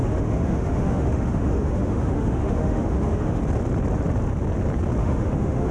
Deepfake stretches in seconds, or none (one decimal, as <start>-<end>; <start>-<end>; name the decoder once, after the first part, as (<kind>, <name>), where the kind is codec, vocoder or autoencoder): 0.0-3.4 (autoencoder, DAC-VAE); 5.0-5.7